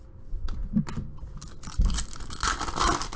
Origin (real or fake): real